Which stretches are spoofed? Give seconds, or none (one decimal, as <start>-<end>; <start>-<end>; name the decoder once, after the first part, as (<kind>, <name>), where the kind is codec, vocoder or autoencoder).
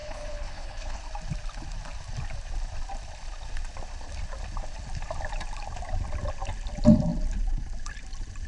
0.0-1.0 (codec, HILCodec)